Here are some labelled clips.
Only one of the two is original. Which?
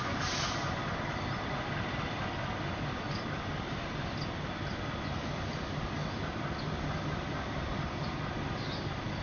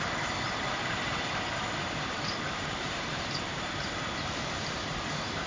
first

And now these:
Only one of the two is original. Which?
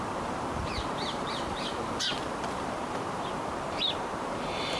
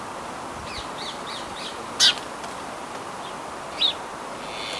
second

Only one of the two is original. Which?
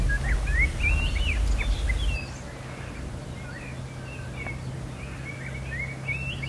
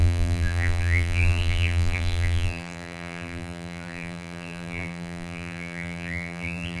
first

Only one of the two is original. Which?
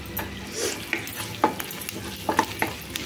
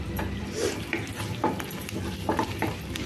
first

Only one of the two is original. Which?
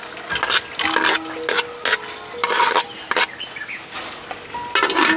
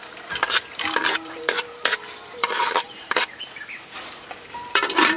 first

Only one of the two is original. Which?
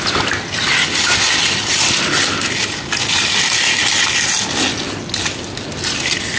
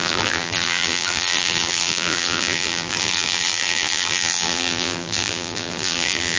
first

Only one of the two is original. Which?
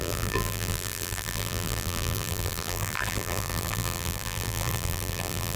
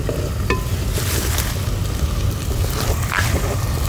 second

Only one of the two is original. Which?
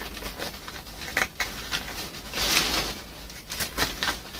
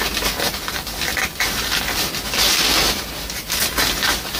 second